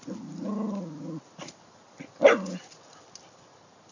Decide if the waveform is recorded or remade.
recorded